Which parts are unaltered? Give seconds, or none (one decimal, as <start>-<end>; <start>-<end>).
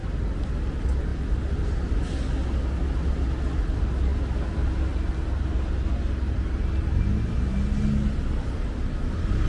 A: 0.0-9.5